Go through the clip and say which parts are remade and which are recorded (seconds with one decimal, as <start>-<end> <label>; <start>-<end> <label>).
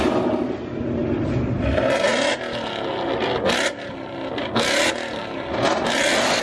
0.0-6.4 recorded